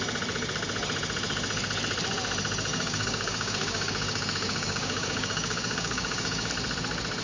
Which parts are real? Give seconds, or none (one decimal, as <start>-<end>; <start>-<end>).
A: 0.0-2.7; 6.5-7.2